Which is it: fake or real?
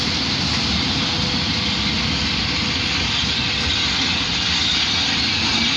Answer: real